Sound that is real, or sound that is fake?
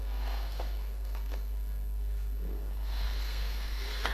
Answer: fake